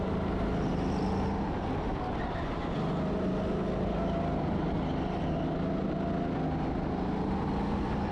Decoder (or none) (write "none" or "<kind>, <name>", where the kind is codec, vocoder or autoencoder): none